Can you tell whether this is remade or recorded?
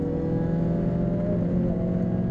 recorded